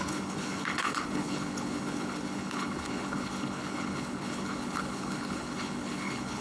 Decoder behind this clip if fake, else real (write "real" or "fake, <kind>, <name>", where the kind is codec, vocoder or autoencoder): fake, codec, HILCodec